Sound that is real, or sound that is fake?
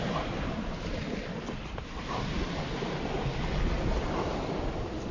real